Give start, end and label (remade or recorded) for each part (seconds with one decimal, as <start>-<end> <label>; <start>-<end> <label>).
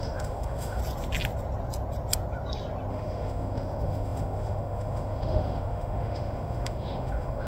0.0-0.8 remade; 0.8-2.9 recorded; 2.9-7.5 remade